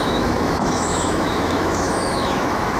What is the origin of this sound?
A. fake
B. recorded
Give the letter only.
A